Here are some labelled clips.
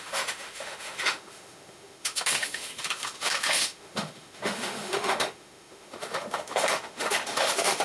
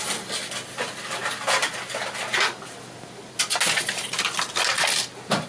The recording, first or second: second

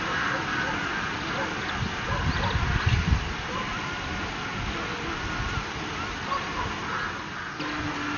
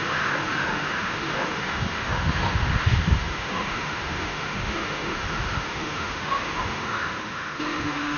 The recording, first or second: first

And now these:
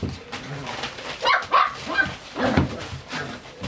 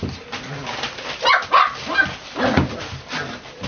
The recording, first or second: second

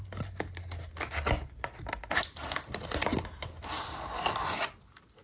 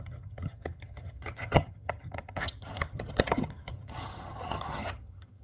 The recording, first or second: first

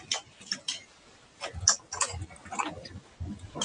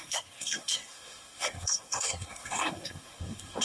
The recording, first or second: first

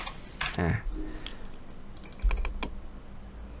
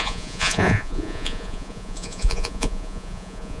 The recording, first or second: first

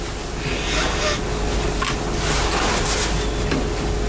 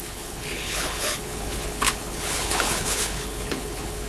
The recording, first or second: first